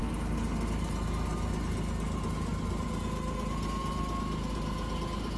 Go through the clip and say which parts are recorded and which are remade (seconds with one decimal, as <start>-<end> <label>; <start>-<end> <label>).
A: 0.0-2.5 recorded; 2.5-3.0 remade; 3.0-5.4 recorded